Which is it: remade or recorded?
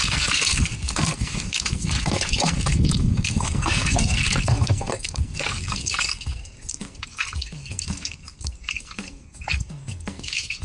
remade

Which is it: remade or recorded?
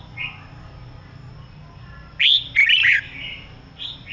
recorded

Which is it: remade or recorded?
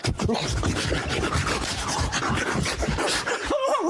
recorded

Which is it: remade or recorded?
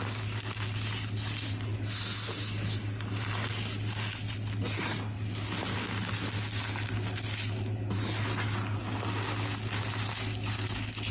recorded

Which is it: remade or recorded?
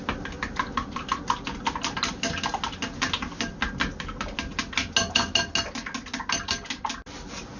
recorded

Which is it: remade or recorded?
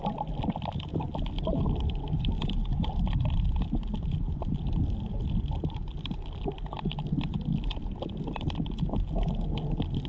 recorded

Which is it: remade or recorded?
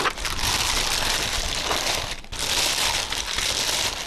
recorded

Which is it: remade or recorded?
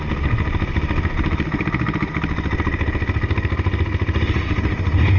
recorded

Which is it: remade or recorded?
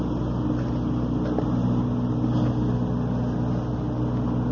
recorded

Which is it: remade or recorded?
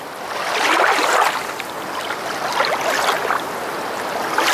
recorded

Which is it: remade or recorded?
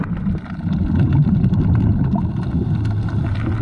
recorded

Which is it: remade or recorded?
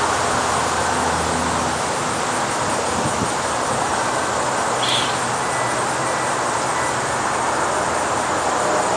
recorded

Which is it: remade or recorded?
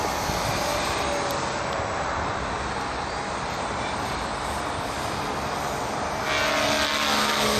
recorded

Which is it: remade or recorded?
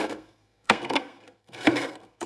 remade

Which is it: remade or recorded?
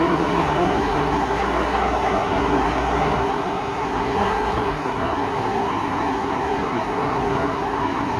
remade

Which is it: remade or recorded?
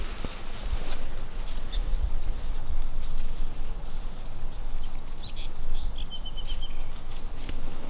recorded